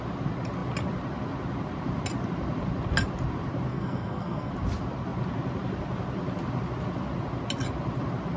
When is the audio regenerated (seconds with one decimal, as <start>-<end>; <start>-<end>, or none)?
3.7-4.5